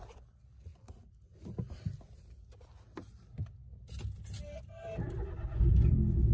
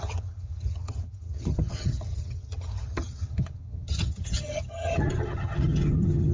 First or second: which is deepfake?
second